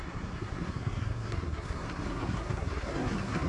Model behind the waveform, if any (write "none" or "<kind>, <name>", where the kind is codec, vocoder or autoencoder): codec, SNAC